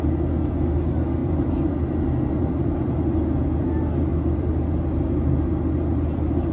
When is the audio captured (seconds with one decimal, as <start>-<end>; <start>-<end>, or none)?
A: 0.0-1.2; 2.3-4.1; 4.7-6.5